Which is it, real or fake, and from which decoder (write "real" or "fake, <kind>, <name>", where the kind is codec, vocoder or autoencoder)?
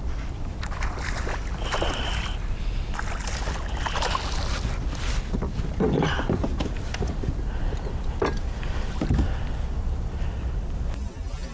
real